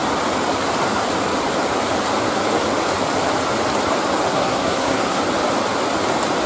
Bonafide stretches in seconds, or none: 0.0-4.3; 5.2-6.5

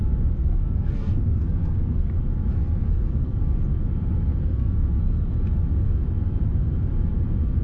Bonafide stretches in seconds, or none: 0.0-0.4; 2.1-2.5; 3.4-4.4; 5.0-7.6